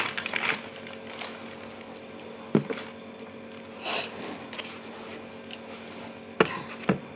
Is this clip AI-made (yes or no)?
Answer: no